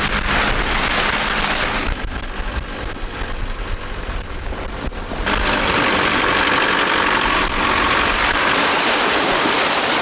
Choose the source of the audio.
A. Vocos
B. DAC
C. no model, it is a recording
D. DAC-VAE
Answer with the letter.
C